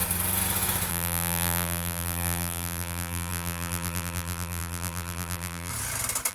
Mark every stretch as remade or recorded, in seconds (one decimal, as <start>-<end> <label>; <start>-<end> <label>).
0.0-0.9 recorded; 0.9-5.7 remade; 5.7-6.3 recorded